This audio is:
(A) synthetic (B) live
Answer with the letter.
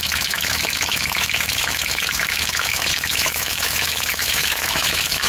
A